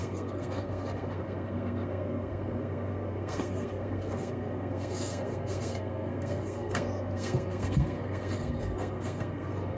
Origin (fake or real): fake